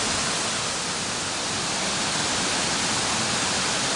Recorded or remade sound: recorded